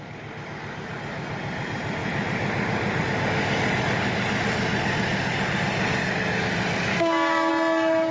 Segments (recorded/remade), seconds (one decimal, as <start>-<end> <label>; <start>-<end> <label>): 0.0-6.9 recorded; 6.9-7.5 remade; 7.5-8.1 recorded